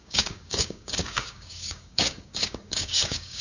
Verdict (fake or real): fake